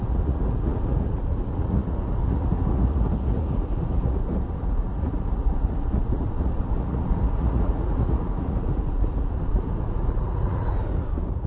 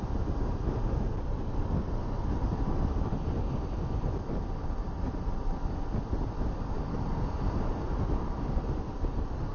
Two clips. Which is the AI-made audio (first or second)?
first